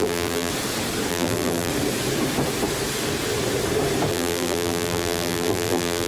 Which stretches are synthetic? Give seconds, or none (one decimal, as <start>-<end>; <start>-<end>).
0.0-0.5; 1.1-1.7; 4.1-6.1